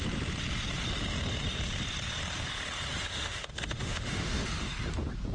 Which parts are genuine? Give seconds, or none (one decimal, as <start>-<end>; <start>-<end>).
0.0-3.1; 4.7-5.3